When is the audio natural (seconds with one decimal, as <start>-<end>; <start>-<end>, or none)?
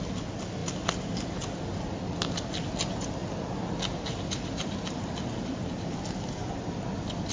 0.0-7.3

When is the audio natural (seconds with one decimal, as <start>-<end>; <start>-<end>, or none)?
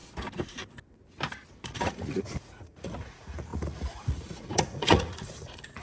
0.0-1.7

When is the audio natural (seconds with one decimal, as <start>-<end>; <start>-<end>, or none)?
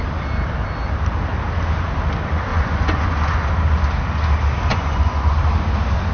0.0-2.5; 3.5-4.7; 5.4-6.1